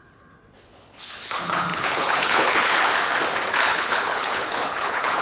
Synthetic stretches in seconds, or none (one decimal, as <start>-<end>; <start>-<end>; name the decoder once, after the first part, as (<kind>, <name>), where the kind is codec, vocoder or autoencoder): 0.0-2.9 (codec, HILCodec); 3.5-5.2